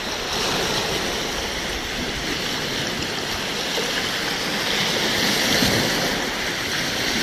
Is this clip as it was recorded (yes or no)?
yes